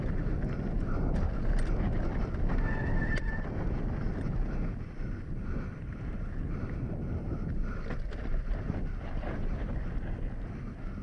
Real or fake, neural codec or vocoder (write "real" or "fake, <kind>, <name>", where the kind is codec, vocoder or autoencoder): real